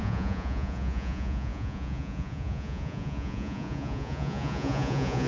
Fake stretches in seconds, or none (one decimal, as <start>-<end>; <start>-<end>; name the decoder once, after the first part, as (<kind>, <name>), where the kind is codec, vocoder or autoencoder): 0.0-5.3 (vocoder, Vocos)